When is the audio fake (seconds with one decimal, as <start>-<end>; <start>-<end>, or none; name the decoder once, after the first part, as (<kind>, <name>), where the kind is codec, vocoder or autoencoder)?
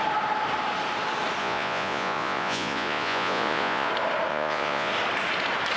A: 1.4-3.9 (vocoder, Vocos); 4.3-4.9